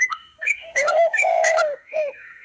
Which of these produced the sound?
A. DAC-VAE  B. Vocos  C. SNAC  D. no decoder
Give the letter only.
A